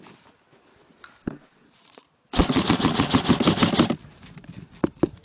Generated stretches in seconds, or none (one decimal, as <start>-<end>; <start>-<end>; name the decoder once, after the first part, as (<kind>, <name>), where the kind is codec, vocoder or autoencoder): 1.4-3.1 (vocoder, Vocos)